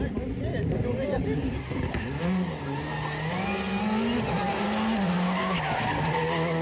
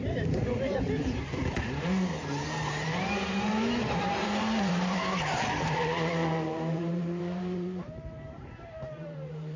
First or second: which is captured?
first